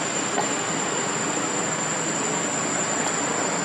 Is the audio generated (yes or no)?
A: no